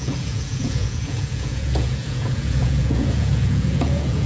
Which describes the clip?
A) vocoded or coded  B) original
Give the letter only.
A